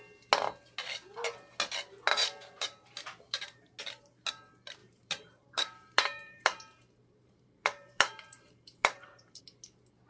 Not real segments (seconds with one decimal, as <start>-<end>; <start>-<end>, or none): 2.1-3.8; 4.8-9.4